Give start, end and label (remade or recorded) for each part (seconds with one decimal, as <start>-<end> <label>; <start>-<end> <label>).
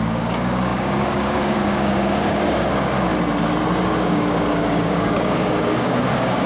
0.0-3.1 remade; 3.1-4.0 recorded; 4.0-6.5 remade